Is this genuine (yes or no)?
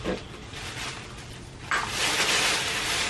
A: yes